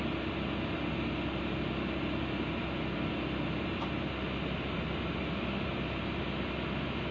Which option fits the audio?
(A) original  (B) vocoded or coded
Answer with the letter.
A